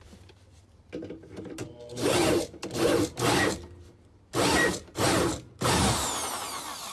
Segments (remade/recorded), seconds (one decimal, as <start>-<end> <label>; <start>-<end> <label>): 0.0-6.9 recorded